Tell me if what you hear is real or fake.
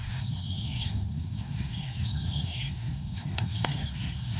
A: fake